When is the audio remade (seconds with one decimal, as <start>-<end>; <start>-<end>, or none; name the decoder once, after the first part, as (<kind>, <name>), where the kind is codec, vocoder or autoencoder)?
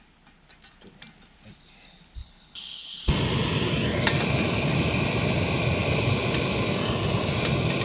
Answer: 2.2-3.0 (codec, HILCodec)